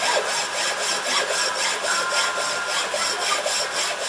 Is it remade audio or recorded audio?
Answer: recorded